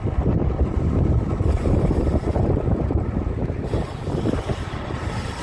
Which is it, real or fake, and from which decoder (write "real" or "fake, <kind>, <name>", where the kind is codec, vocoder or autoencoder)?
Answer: real